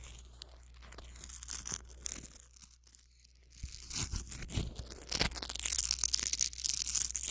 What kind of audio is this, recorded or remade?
recorded